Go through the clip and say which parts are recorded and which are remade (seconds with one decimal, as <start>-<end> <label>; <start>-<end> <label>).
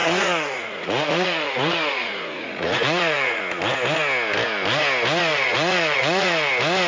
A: 0.0-3.4 remade; 3.4-5.3 recorded; 5.3-6.5 remade; 6.5-6.9 recorded